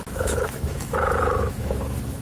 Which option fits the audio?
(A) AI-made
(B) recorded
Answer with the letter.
A